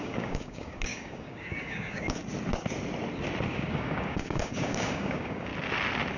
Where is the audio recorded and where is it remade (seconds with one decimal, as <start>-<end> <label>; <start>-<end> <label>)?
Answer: 0.0-2.2 remade; 2.2-3.5 recorded; 3.5-5.5 remade; 5.5-6.2 recorded

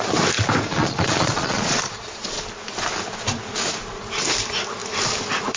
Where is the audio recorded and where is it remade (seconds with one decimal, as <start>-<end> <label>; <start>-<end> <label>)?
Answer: 0.0-0.7 recorded; 0.7-2.4 remade; 2.4-5.6 recorded

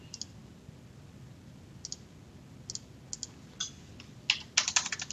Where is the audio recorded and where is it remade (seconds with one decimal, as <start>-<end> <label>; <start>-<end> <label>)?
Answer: 0.0-5.1 recorded

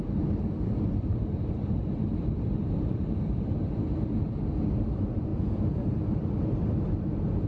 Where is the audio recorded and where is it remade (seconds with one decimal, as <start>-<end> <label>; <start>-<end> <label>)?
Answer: 0.0-5.3 recorded; 5.3-6.1 remade; 6.1-7.5 recorded